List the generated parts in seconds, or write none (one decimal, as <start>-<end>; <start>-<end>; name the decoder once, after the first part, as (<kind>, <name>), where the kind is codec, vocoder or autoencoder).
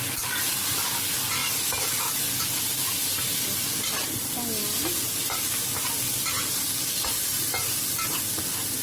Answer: none